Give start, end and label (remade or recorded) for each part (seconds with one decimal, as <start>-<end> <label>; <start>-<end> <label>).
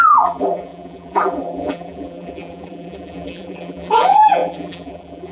0.0-5.3 remade